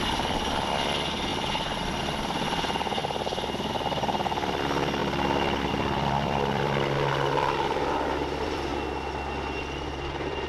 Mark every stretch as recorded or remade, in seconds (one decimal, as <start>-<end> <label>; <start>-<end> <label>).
0.0-5.0 remade; 5.0-5.7 recorded; 5.7-8.7 remade; 8.7-10.1 recorded; 10.1-10.5 remade